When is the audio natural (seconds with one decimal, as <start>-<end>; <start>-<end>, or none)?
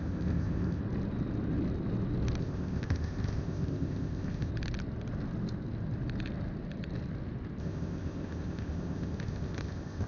0.8-2.4; 4.5-7.6